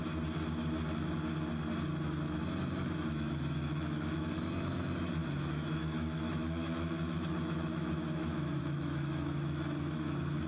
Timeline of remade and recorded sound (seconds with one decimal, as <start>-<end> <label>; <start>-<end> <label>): 0.0-2.6 recorded; 2.6-10.5 remade